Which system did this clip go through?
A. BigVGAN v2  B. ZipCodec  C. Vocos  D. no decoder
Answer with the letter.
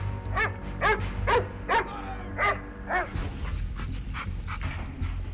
D